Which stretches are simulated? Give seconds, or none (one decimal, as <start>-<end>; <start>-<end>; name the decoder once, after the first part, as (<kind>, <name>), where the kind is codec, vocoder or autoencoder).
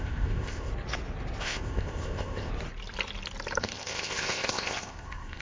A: 0.0-0.7 (codec, ZipCodec); 1.4-2.5; 3.6-5.4